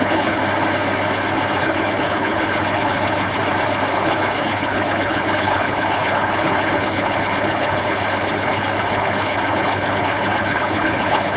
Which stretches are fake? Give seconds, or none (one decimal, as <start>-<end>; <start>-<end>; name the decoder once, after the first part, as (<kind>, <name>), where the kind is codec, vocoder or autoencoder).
0.0-0.4 (codec, HILCodec); 1.6-3.4; 3.9-11.4